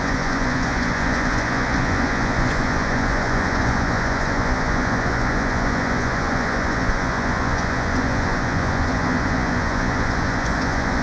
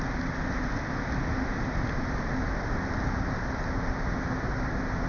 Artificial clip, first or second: first